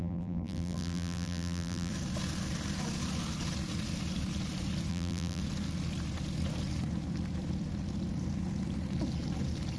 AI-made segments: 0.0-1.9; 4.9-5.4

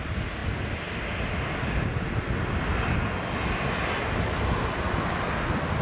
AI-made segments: none